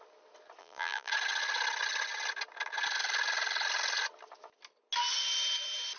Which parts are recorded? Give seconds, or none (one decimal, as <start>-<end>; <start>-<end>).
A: 0.0-0.6; 1.1-6.0